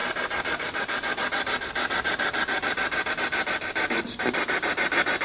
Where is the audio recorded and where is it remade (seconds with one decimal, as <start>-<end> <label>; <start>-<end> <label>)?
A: 0.0-5.2 recorded